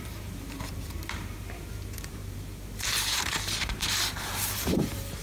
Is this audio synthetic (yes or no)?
yes